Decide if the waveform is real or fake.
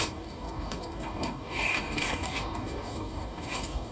fake